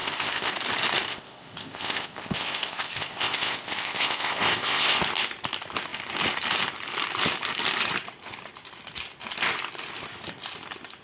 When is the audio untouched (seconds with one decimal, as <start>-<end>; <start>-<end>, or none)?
0.5-1.1; 5.0-11.0